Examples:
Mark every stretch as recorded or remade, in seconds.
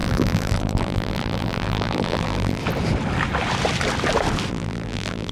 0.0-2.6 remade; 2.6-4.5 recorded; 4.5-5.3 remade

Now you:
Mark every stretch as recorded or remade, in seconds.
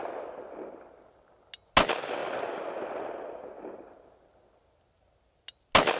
0.0-6.0 recorded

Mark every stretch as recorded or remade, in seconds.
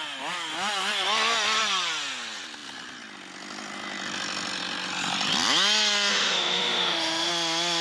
0.0-6.1 recorded; 6.1-7.3 remade; 7.3-7.8 recorded